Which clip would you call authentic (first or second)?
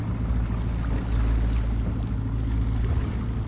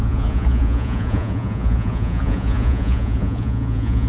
first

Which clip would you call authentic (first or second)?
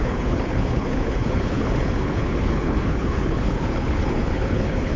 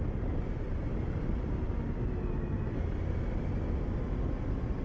second